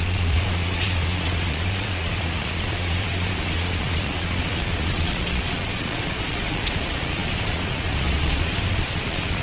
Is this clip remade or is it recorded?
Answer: remade